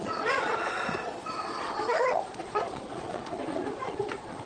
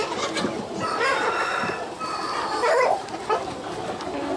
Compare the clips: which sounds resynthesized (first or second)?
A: first